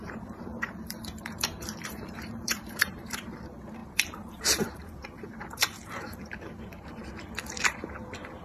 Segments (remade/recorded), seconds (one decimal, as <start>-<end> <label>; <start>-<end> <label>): 0.0-8.4 remade

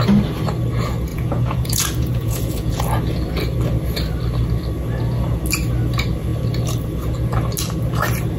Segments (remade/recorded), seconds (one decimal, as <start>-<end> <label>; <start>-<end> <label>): 0.0-1.1 recorded; 1.1-2.8 remade; 2.8-8.4 recorded

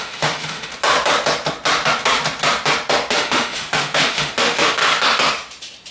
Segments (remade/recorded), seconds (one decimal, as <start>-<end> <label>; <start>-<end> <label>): 0.0-0.7 remade; 0.7-3.1 recorded; 3.1-4.8 remade; 4.8-5.9 recorded